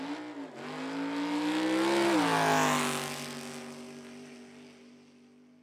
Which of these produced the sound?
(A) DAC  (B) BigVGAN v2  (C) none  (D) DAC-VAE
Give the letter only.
C